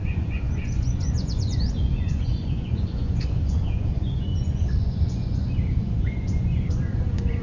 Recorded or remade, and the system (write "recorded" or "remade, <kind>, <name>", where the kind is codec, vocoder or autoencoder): remade, vocoder, Vocos